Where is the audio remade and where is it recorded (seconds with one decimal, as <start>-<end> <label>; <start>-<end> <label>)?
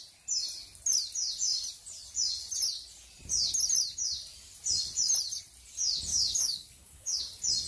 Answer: 0.0-6.1 recorded; 6.1-7.2 remade; 7.2-7.7 recorded